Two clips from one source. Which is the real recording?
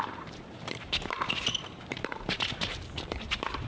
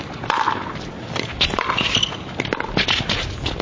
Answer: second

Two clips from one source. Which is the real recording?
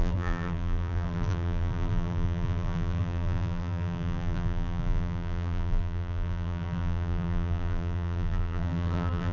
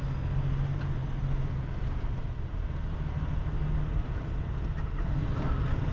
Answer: second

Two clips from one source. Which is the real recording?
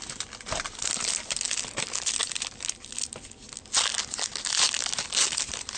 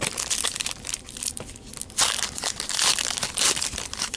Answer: first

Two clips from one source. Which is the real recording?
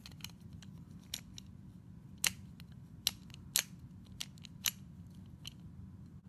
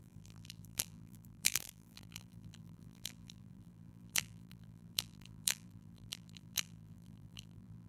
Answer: first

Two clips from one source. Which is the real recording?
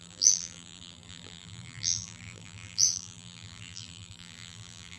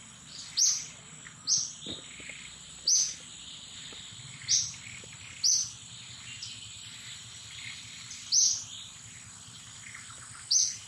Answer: second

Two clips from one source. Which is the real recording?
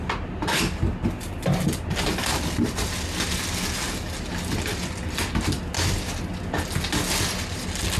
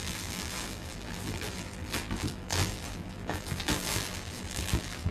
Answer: first